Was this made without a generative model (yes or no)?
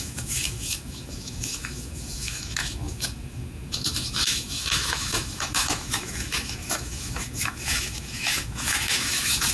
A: no